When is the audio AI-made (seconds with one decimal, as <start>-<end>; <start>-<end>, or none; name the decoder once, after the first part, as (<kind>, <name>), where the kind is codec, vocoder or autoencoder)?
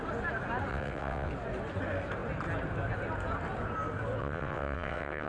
0.7-1.3 (vocoder, WaveNeXt); 4.2-5.3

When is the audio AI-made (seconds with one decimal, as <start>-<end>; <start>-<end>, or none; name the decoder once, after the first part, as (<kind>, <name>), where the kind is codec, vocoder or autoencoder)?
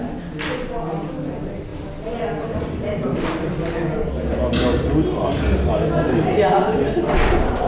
none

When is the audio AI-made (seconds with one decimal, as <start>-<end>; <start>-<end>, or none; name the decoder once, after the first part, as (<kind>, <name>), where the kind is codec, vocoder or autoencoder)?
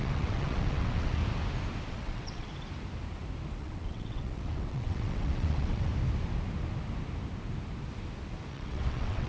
0.0-1.2 (vocoder, WaveNeXt); 1.9-2.5; 3.6-5.9; 8.5-9.3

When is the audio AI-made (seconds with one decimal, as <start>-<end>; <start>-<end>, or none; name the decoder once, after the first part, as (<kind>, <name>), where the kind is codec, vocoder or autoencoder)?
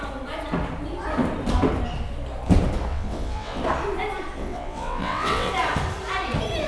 2.9-3.6 (vocoder, WaveNeXt); 4.4-5.5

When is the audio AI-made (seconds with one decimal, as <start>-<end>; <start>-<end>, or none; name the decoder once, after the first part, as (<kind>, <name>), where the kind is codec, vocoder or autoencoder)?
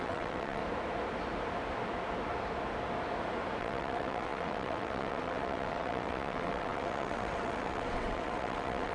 0.0-0.6 (vocoder, WaveNeXt); 3.6-8.9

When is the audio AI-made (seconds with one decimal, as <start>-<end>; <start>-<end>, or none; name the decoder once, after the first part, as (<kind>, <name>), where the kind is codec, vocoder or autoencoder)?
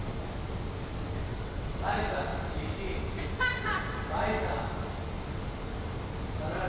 1.3-1.8 (vocoder, WaveNeXt)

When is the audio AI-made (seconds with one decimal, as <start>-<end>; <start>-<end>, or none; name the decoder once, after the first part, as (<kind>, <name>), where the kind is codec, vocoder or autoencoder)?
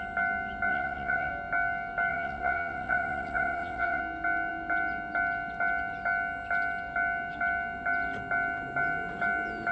0.7-1.3 (vocoder, WaveNeXt); 2.1-4.0